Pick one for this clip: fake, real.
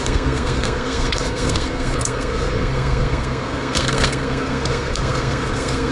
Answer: fake